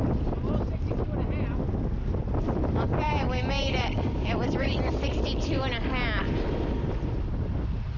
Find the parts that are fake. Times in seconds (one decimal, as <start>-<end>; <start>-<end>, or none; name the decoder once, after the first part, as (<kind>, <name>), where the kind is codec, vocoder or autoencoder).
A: none